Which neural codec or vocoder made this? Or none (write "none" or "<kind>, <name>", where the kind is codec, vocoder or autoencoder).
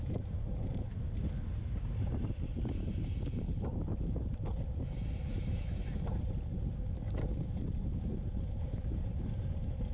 vocoder, BigVGAN v2